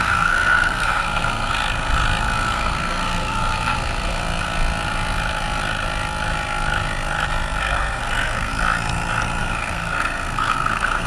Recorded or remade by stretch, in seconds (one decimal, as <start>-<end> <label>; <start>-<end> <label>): 0.0-1.6 remade; 1.6-2.5 recorded; 2.5-4.2 remade; 4.2-7.6 recorded; 7.6-8.5 remade; 8.5-9.4 recorded; 9.4-11.1 remade